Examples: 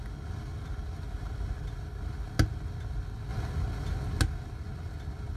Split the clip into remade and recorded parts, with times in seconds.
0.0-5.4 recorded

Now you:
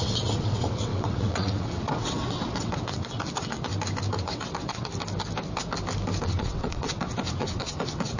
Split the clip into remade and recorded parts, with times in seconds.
0.0-3.7 remade; 3.7-4.2 recorded; 4.2-4.9 remade; 4.9-6.2 recorded; 6.2-8.2 remade